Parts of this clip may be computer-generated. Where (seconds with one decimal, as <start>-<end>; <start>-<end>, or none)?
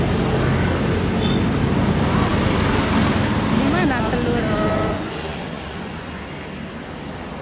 4.9-6.2